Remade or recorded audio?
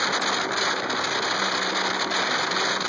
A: recorded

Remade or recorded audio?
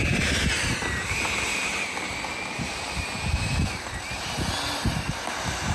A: recorded